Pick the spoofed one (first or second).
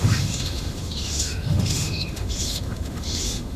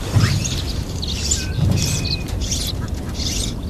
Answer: first